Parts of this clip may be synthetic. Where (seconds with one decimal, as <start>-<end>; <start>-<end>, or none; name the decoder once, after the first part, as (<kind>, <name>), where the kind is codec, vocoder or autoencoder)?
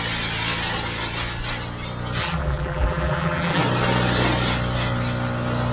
2.2-3.6 (vocoder, BigVGAN v2)